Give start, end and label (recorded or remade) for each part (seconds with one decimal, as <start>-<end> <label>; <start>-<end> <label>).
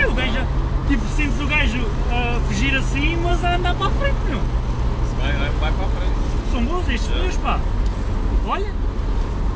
0.0-9.6 recorded